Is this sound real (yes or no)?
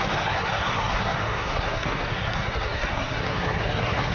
no